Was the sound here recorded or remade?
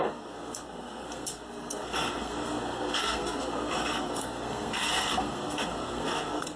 remade